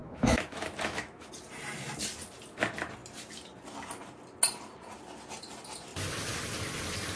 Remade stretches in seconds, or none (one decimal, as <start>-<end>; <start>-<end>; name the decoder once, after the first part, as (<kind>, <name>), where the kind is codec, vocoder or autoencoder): 0.0-1.3 (autoencoder, DAC-VAE)